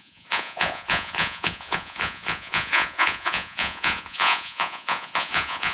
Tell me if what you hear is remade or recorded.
remade